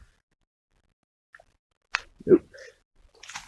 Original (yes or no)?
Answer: yes